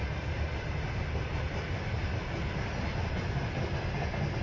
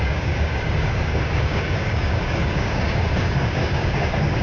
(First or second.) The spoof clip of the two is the second